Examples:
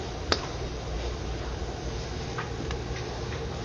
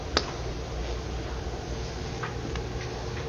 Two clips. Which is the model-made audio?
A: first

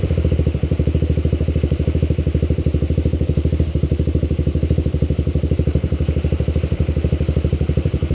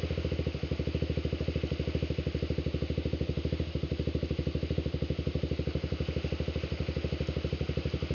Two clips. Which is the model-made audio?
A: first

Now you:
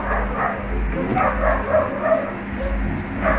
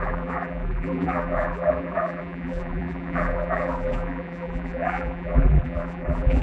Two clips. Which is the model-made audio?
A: second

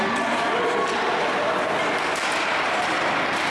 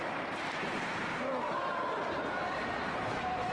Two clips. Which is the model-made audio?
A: second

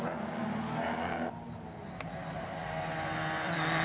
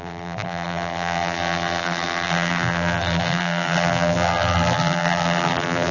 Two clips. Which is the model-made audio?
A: second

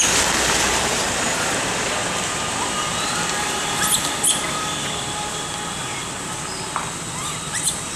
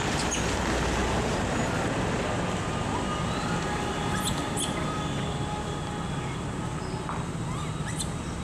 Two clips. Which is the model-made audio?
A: first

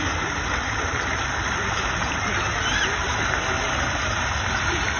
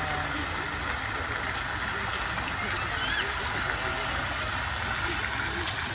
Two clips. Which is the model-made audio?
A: first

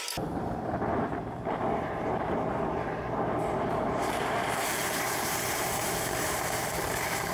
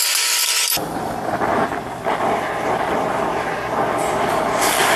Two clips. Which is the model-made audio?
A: first